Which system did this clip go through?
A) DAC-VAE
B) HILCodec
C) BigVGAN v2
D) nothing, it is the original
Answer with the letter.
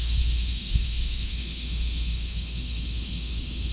A